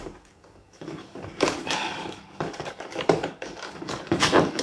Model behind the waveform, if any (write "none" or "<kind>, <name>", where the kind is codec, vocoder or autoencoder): codec, DAC